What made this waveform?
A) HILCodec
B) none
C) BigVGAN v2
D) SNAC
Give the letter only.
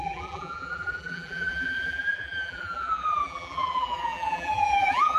C